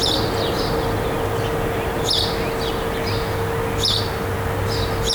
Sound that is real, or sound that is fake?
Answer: real